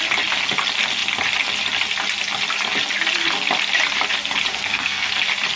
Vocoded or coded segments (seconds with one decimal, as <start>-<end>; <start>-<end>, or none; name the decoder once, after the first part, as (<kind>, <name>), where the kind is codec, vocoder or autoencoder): 4.5-5.1 (codec, SNAC)